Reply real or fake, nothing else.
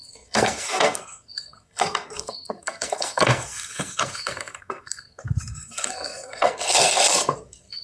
fake